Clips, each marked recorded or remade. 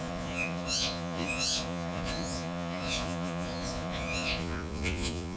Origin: remade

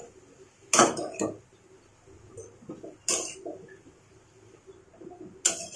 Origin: recorded